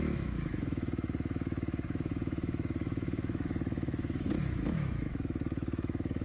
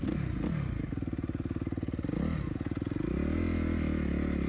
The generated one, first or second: first